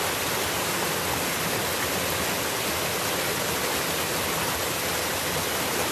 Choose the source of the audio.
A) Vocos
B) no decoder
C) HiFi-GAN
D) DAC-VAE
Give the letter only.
B